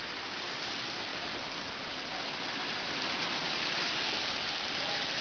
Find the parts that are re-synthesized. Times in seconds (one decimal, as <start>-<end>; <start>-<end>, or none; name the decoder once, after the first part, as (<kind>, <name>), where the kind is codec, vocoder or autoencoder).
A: 1.1-3.8 (vocoder, BigVGAN v2)